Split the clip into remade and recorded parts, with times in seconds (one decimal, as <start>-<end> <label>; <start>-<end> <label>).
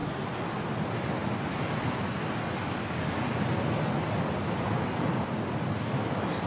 0.0-6.5 recorded